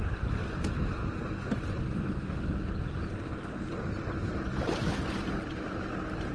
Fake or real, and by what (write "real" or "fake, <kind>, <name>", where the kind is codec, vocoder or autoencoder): real